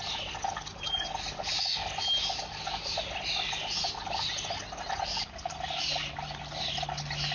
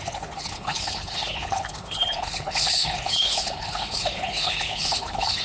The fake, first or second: second